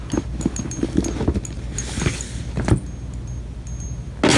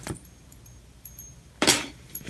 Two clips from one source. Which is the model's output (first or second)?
second